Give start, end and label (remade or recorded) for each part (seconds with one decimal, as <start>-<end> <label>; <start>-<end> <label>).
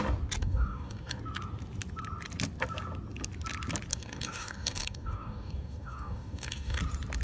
0.0-0.4 recorded; 0.4-1.2 remade; 1.2-3.9 recorded; 3.9-6.8 remade; 6.8-7.2 recorded